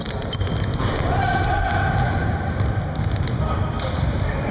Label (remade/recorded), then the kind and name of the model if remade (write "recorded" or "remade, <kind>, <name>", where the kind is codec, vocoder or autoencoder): recorded